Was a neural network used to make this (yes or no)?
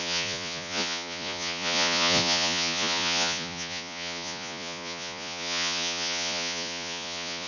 yes